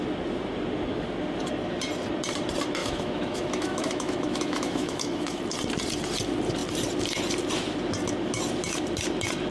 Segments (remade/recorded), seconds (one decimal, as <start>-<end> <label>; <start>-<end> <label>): 0.0-2.8 recorded; 2.8-5.4 remade; 5.4-9.5 recorded